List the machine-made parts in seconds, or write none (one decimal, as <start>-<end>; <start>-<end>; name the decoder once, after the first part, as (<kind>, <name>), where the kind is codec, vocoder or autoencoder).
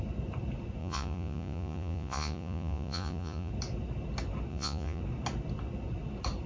0.8-3.5 (vocoder, Vocos); 4.5-5.0